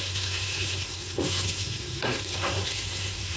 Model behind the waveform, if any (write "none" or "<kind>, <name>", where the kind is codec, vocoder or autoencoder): codec, SNAC